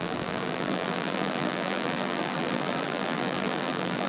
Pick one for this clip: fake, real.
fake